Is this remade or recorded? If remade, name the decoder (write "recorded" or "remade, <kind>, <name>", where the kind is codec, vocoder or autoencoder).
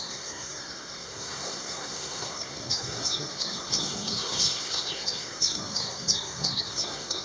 remade, codec, SNAC